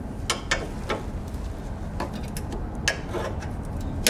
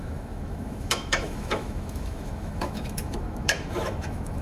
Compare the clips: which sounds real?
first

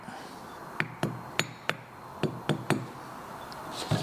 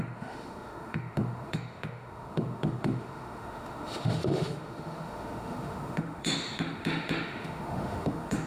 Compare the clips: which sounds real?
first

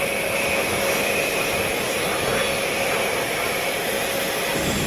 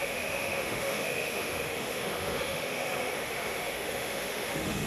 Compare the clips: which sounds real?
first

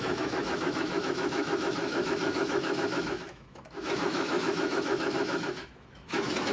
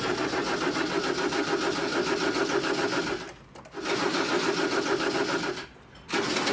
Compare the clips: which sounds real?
second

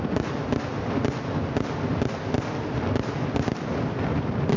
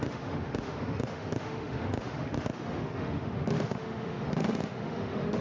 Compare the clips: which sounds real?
first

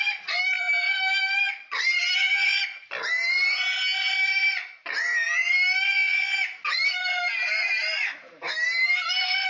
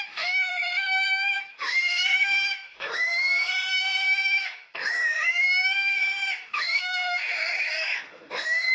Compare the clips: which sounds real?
first